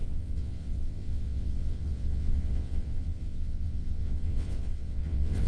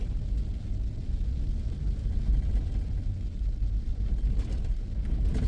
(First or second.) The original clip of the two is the second